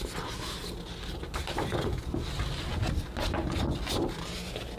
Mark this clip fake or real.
real